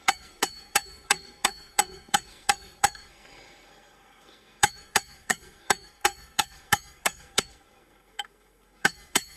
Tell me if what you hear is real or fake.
fake